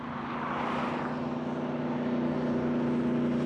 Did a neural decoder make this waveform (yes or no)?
no